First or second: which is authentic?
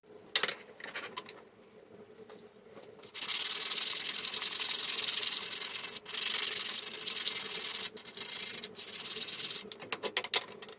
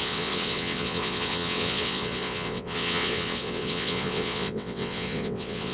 first